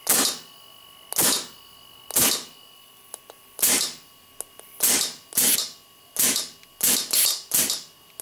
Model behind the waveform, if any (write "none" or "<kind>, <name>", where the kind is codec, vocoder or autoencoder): none